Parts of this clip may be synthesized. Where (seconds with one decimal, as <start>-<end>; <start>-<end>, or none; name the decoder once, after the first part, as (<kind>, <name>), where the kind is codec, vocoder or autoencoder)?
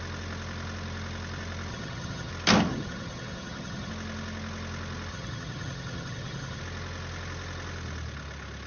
1.7-2.3 (vocoder, HiFi-GAN); 2.7-3.9; 5.1-6.6